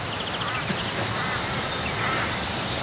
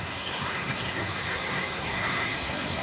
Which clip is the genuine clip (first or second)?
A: first